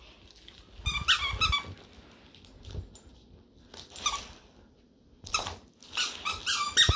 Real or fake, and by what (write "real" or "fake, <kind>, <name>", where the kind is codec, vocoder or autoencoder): real